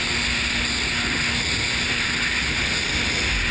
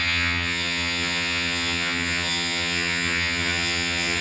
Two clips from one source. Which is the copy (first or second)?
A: second